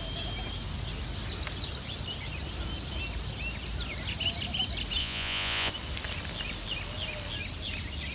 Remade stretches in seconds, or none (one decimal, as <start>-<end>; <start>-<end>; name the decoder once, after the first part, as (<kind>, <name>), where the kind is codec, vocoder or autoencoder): 5.0-5.7 (vocoder, Vocos)